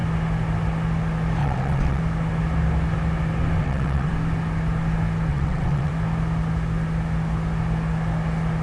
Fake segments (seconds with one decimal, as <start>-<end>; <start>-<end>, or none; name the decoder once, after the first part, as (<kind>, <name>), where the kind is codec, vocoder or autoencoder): 1.4-2.0 (vocoder, WaveNeXt); 3.6-4.1; 5.3-5.9